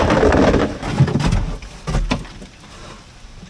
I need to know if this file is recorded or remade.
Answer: recorded